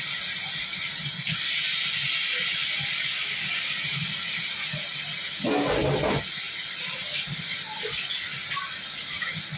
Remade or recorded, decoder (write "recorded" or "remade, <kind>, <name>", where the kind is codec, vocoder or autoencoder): recorded